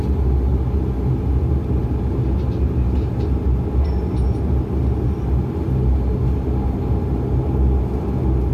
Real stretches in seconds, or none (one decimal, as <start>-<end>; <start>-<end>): 0.0-8.5